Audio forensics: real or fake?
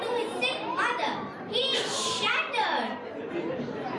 fake